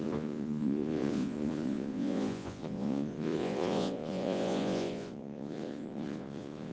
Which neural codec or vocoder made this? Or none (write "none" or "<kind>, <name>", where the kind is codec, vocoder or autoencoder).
vocoder, Vocos